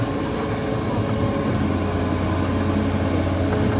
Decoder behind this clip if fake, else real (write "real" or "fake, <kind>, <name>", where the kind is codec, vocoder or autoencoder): real